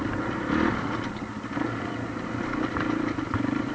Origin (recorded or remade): recorded